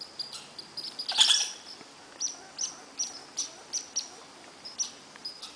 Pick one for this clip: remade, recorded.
recorded